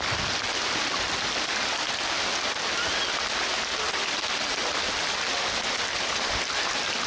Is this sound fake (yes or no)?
no